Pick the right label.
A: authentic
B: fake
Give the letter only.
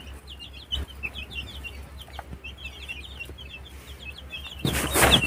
A